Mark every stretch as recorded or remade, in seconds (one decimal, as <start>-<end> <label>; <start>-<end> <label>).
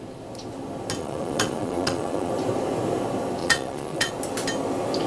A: 0.0-1.0 recorded; 1.0-2.3 remade; 2.3-3.4 recorded; 3.4-4.1 remade; 4.1-5.1 recorded